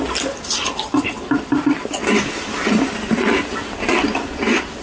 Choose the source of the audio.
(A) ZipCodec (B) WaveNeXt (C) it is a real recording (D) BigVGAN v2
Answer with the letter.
C